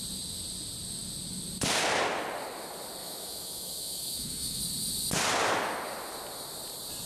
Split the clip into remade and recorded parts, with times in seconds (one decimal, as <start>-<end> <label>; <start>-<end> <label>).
0.0-3.0 recorded; 3.0-4.6 remade; 4.6-7.1 recorded